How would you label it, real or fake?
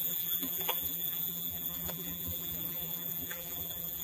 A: fake